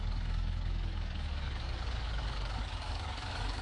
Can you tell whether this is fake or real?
fake